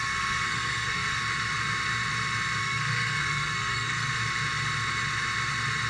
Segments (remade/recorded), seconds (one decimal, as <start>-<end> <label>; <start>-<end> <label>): 0.0-1.2 remade; 1.2-2.6 recorded; 2.6-4.1 remade; 4.1-5.9 recorded